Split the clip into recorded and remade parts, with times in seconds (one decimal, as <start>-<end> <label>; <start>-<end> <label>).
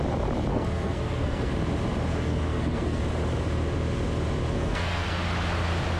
0.0-0.5 recorded; 0.5-1.5 remade; 1.5-2.1 recorded; 2.1-3.0 remade; 3.0-4.5 recorded; 4.5-5.2 remade; 5.2-6.0 recorded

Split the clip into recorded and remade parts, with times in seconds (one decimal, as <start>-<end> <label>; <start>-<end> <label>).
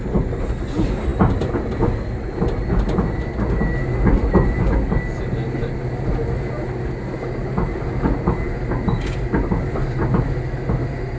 0.0-11.2 recorded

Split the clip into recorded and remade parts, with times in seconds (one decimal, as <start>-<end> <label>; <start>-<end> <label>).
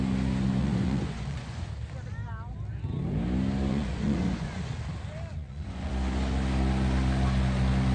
0.0-0.6 recorded; 0.6-1.7 remade; 1.7-3.7 recorded; 3.7-4.6 remade; 4.6-5.3 recorded; 5.3-5.9 remade; 5.9-7.9 recorded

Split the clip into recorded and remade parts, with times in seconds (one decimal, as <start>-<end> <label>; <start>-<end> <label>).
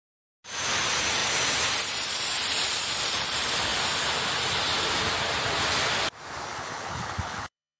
0.0-6.5 recorded; 6.5-7.8 remade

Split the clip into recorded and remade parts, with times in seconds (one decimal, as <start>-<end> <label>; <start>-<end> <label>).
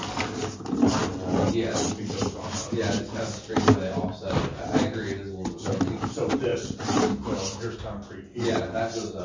0.0-9.2 recorded